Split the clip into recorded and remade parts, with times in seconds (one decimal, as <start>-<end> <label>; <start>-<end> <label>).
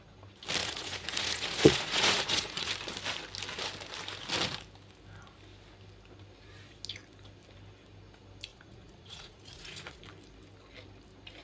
0.0-0.6 recorded; 0.6-2.7 remade; 2.7-8.5 recorded; 8.5-10.0 remade; 10.0-11.4 recorded